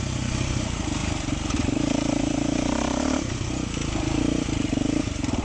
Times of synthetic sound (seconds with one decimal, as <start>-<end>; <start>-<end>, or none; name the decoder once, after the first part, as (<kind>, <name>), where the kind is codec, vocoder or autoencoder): 0.0-5.4 (vocoder, BigVGAN v2)